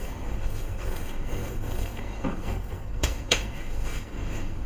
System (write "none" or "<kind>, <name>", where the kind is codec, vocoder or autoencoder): codec, SNAC